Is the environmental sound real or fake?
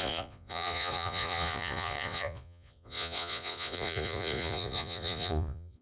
fake